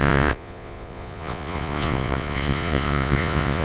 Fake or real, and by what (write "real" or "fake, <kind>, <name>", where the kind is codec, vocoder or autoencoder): fake, vocoder, Vocos